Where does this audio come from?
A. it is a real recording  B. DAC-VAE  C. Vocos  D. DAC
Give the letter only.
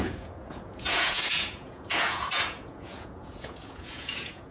C